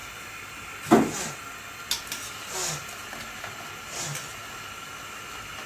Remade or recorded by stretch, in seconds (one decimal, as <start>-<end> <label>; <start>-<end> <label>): 0.0-5.7 recorded